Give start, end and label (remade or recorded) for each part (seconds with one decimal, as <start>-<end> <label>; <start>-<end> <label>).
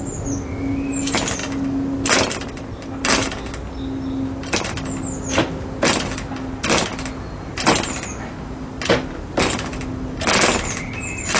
0.0-11.4 recorded